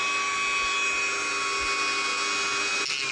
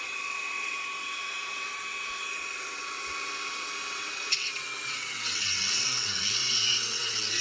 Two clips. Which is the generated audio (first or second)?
second